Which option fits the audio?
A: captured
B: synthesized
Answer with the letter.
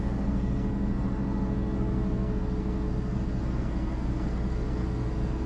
B